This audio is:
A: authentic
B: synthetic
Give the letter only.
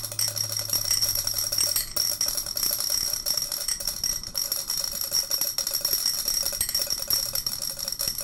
A